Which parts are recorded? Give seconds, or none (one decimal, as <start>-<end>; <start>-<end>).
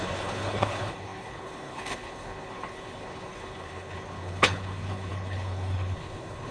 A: none